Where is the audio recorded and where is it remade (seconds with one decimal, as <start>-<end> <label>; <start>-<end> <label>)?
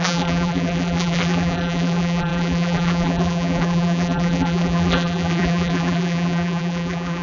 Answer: 0.0-7.2 remade